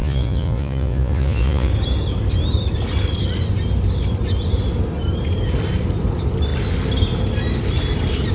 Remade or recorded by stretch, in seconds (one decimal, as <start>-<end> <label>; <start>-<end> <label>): 0.0-1.7 remade; 1.7-8.3 recorded